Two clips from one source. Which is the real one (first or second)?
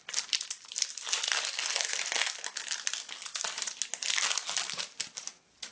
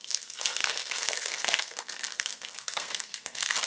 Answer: first